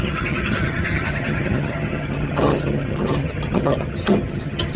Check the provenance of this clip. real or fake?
fake